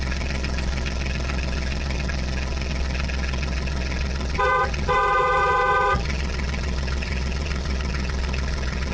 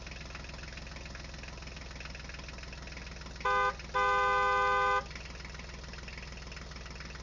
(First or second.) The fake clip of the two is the first